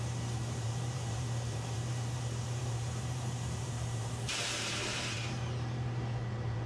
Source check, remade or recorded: remade